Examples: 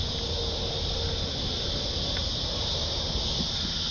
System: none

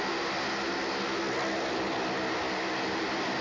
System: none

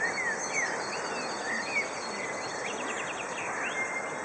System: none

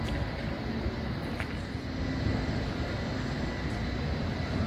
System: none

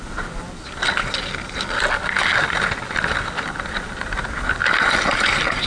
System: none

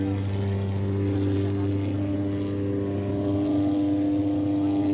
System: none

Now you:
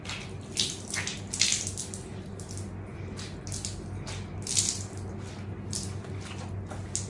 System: none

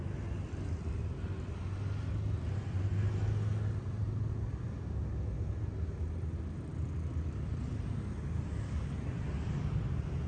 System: none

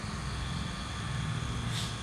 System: none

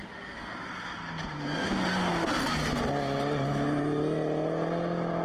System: none